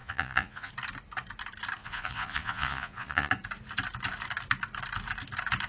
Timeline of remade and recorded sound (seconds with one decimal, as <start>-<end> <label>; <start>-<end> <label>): 0.0-0.7 remade; 0.7-1.8 recorded; 1.8-3.3 remade; 3.3-5.7 recorded